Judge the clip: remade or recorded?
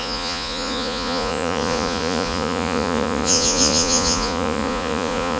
remade